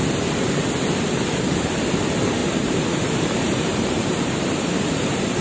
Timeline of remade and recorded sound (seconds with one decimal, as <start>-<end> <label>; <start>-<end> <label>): 0.0-2.4 recorded; 2.4-5.4 remade